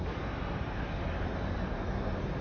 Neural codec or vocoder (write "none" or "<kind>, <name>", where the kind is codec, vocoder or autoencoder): none